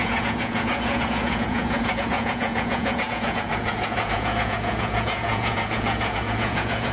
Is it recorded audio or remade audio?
remade